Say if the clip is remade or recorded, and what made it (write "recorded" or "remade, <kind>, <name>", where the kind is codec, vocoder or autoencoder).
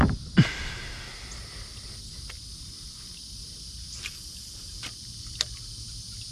recorded